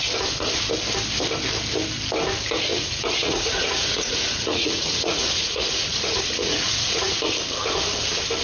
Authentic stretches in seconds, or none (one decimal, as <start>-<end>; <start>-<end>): 0.0-2.7; 7.2-8.4